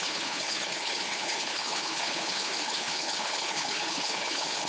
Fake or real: fake